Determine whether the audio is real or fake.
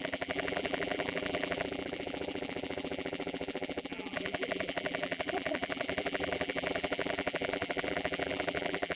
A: fake